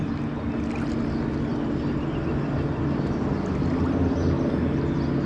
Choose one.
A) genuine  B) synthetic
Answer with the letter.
A